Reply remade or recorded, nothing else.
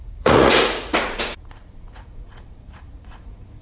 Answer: remade